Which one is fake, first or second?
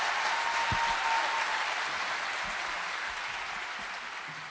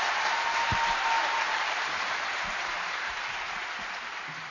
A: second